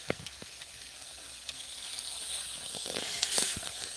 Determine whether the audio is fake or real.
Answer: fake